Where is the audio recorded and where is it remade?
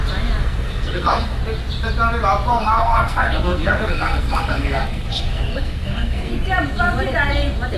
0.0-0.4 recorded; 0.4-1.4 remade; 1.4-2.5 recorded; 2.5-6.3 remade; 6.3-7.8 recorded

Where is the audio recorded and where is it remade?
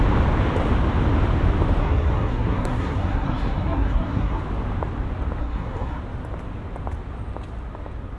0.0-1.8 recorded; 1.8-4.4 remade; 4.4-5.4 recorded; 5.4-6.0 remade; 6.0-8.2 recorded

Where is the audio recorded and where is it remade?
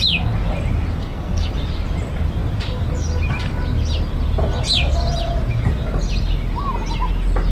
0.0-1.0 recorded; 1.0-1.5 remade; 1.5-7.5 recorded